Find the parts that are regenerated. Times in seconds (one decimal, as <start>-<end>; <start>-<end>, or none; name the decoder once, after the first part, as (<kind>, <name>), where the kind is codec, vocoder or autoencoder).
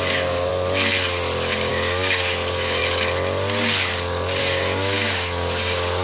0.0-0.5 (codec, DAC); 1.7-2.8; 4.4-6.0